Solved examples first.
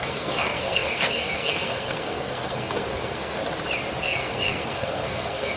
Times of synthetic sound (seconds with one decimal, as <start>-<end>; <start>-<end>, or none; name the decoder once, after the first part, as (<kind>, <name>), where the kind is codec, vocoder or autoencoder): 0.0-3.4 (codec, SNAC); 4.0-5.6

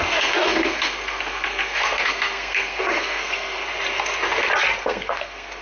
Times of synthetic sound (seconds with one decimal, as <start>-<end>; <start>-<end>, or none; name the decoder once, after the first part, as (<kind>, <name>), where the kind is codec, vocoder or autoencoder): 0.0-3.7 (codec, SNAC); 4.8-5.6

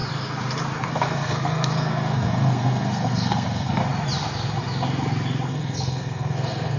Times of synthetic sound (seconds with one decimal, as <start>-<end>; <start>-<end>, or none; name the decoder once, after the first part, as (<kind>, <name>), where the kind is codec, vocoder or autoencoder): 0.9-3.8 (codec, SNAC); 5.5-6.8

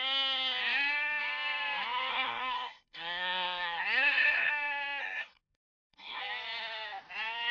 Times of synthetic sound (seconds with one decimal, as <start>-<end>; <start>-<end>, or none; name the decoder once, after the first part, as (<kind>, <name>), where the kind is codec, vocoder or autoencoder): 2.1-4.5 (codec, SNAC); 5.0-6.2

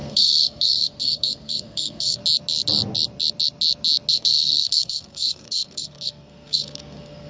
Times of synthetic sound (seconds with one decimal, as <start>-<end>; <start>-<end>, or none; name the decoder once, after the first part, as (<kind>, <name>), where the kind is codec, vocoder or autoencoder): 0.0-2.2 (codec, SNAC); 4.1-7.3